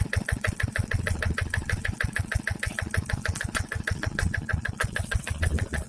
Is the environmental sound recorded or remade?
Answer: remade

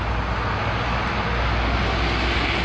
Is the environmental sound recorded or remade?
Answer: recorded